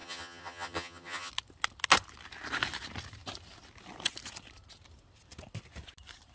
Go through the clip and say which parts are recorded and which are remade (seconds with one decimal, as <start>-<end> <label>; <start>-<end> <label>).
0.0-1.3 remade; 1.3-6.3 recorded